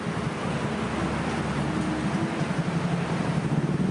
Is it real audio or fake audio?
real